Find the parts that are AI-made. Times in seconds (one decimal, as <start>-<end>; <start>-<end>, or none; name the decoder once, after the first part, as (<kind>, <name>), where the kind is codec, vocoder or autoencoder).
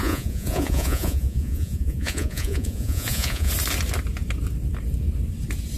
0.0-3.5 (vocoder, Vocos)